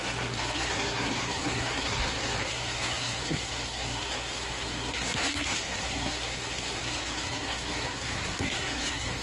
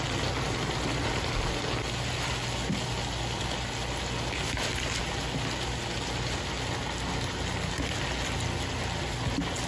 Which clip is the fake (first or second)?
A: first